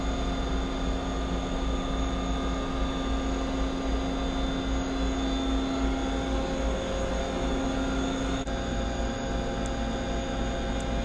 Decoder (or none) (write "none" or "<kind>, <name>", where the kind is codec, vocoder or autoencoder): none